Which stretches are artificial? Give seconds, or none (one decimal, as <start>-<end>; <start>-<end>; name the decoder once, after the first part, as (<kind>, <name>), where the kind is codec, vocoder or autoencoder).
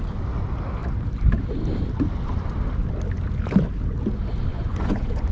4.5-5.3 (vocoder, Vocos)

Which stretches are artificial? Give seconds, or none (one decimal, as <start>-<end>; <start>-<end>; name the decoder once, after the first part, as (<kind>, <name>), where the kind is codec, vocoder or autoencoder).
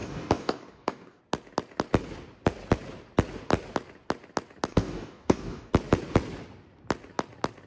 0.0-1.2 (codec, DAC); 4.7-5.7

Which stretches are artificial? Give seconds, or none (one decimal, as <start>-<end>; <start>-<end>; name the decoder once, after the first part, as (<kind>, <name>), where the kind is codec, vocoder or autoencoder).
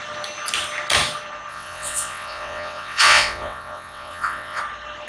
1.5-4.6 (vocoder, WaveNeXt)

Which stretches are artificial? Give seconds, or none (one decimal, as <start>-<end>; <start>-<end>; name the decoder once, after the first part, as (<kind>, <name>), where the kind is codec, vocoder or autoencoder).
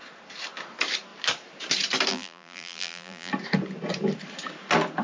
2.1-3.3 (vocoder, BigVGAN v2)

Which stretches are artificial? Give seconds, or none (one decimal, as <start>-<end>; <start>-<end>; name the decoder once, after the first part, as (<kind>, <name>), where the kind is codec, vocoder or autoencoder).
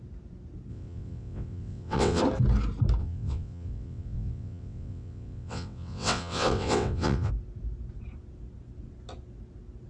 0.7-2.2 (vocoder, WaveNeXt); 3.0-7.3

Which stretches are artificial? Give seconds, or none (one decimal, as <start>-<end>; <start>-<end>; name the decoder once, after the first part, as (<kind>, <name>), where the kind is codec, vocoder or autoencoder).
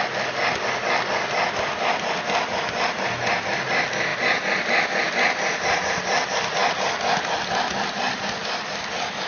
none